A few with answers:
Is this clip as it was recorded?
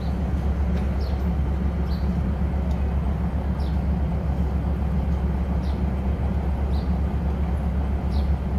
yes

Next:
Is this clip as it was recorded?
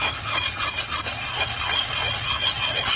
yes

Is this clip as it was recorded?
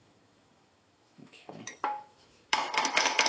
no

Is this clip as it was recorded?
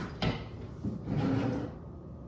yes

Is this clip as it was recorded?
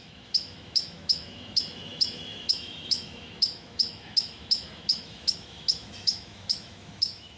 no